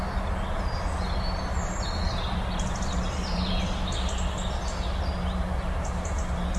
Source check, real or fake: real